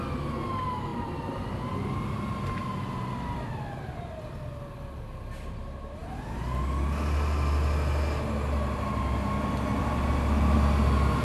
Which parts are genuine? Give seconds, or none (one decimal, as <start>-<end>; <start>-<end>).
0.0-0.9; 2.2-11.2